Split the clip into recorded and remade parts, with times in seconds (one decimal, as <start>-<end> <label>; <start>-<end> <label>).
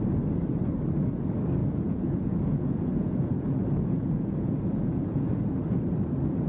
0.0-1.6 recorded; 1.6-5.4 remade; 5.4-6.5 recorded